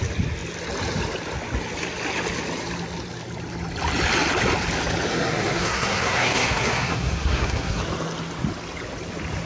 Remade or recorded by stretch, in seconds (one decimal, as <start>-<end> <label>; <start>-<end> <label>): 0.0-5.1 recorded; 5.1-7.8 remade; 7.8-9.5 recorded